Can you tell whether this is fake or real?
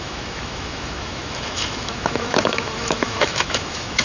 fake